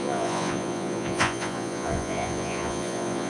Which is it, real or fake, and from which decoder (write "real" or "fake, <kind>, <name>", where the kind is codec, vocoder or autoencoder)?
fake, vocoder, Vocos